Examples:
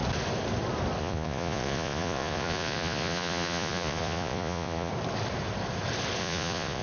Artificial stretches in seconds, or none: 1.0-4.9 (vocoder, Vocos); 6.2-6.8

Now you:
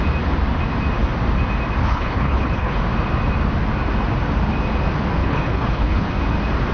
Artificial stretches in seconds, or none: 1.8-2.8 (codec, HILCodec); 5.2-6.1

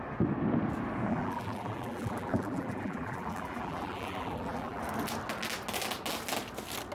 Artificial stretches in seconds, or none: 1.1-4.8 (vocoder, BigVGAN v2)

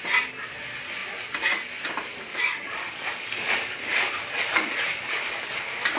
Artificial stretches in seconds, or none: 2.3-5.6 (codec, DAC)

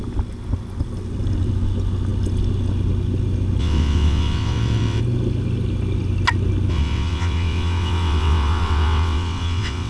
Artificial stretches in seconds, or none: 3.6-5.0 (vocoder, WaveNeXt); 6.7-9.9

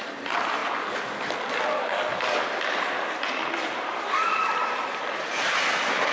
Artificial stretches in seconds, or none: none

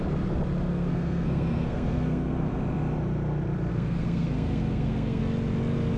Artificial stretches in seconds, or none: 0.7-2.6 (codec, SNAC); 3.7-5.2

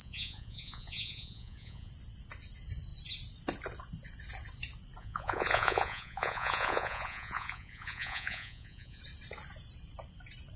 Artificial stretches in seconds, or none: 0.0-1.9 (vocoder, Vocos); 5.0-9.0